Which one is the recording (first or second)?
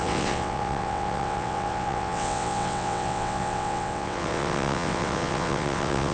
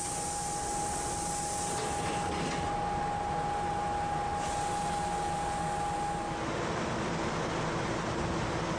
second